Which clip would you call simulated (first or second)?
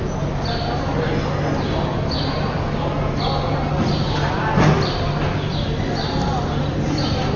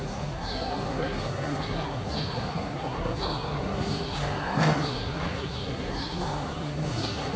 second